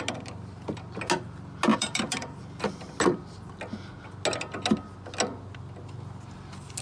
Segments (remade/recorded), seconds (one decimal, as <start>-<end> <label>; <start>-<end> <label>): 0.0-1.7 recorded; 1.7-2.4 remade; 2.4-6.8 recorded